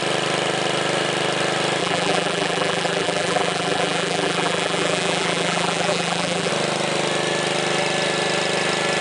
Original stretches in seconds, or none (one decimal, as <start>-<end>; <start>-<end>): 0.0-1.8; 6.5-9.0